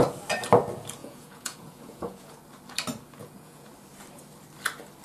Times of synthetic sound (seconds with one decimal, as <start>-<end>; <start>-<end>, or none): 1.0-2.4; 3.2-3.7